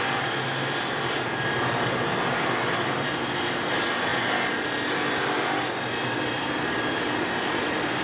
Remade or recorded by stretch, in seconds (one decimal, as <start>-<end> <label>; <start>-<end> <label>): 0.0-8.0 recorded